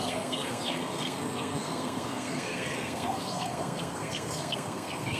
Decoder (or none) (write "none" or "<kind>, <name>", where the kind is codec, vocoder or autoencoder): codec, SNAC